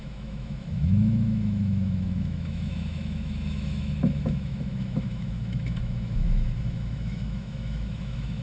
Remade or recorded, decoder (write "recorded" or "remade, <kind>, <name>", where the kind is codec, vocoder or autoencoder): remade, autoencoder, DAC-VAE